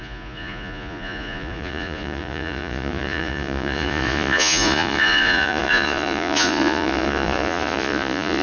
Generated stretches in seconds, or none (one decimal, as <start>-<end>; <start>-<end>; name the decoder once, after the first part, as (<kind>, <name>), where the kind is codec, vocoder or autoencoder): 0.0-8.4 (vocoder, Vocos)